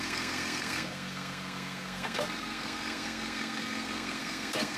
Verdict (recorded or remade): remade